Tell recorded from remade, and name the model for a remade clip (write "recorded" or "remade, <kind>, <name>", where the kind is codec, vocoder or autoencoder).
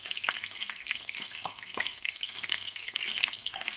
remade, codec, SNAC